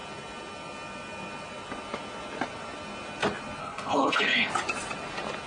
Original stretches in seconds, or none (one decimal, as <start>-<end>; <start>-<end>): 0.0-3.6; 4.5-5.5